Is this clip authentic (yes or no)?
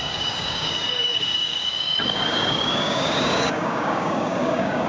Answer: no